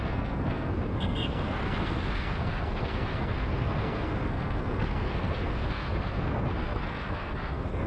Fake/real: fake